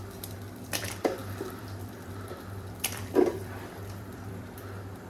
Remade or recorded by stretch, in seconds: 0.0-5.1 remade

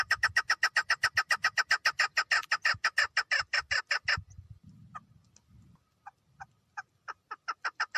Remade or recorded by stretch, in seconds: 0.0-8.0 recorded

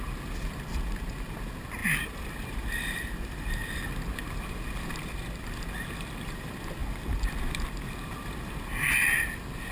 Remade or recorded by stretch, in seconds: 0.0-1.8 recorded; 1.8-2.5 remade; 2.5-9.7 recorded

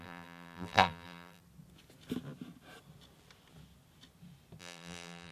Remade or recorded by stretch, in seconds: 0.0-1.4 remade; 1.4-4.6 recorded; 4.6-5.3 remade

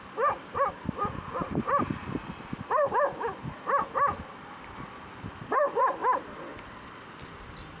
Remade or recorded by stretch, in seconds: 0.0-6.0 recorded; 6.0-6.6 remade; 6.6-7.8 recorded

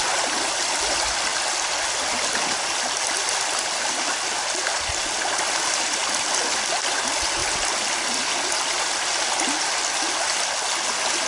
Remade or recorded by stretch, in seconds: 0.0-11.3 recorded

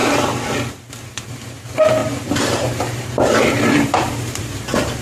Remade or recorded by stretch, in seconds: 0.0-2.0 recorded; 2.0-5.0 remade

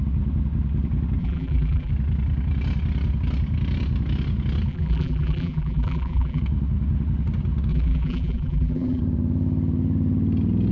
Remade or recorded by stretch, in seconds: 0.0-1.2 recorded; 1.2-1.9 remade; 1.9-4.7 recorded; 4.7-6.4 remade; 6.4-7.7 recorded; 7.7-9.0 remade; 9.0-10.7 recorded